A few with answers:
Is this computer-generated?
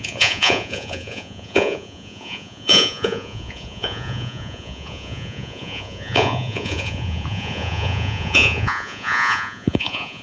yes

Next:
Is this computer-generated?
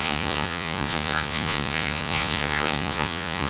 yes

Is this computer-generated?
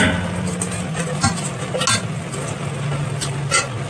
no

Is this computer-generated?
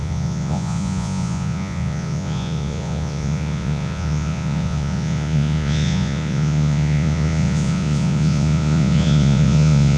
yes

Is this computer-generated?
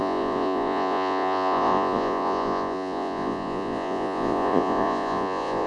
yes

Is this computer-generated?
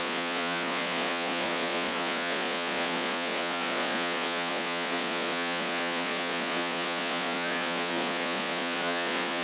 yes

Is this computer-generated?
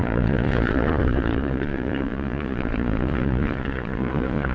yes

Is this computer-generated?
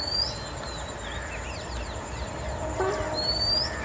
no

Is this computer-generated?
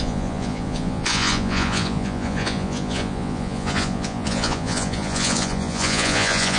yes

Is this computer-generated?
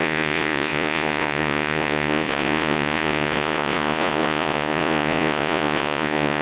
yes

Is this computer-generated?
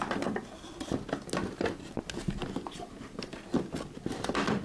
no